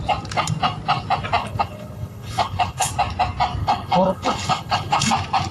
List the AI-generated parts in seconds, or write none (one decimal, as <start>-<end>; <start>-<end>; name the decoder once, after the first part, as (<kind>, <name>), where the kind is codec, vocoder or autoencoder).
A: 1.4-2.9 (codec, HILCodec); 3.6-5.1